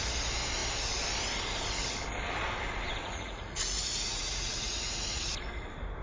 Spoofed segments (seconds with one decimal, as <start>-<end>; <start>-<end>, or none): 3.0-5.2